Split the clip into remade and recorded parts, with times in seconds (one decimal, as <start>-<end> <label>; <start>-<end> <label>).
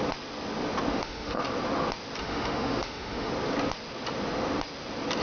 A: 0.0-0.9 recorded; 0.9-1.4 remade; 1.4-2.2 recorded; 2.2-3.3 remade; 3.3-5.2 recorded